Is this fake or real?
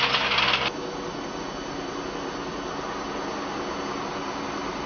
real